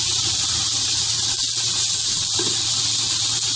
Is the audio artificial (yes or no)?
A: no